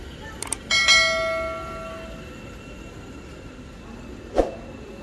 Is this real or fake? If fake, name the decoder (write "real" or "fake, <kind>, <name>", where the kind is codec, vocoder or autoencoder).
real